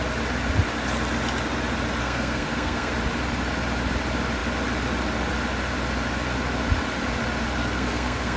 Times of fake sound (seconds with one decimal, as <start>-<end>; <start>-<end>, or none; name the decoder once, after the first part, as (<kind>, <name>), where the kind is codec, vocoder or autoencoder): 2.0-2.9 (codec, SNAC); 7.6-8.4